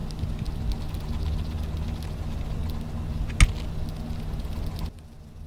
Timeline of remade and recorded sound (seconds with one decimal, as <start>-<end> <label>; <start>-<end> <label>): 0.0-5.5 recorded